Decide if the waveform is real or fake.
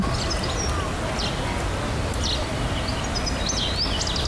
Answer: real